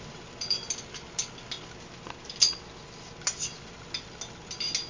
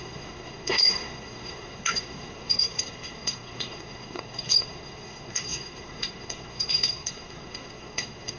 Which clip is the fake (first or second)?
second